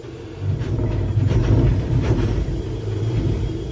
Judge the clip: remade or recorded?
remade